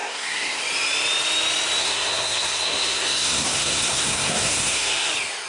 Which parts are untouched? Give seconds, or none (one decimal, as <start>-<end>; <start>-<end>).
0.6-1.8; 5.1-5.5